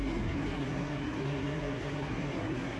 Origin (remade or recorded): remade